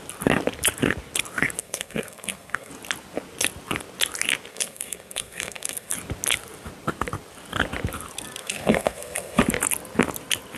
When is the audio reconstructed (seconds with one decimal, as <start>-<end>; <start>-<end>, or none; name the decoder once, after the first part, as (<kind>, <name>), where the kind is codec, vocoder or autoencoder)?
1.6-2.7 (codec, SNAC); 4.5-5.9; 8.4-9.4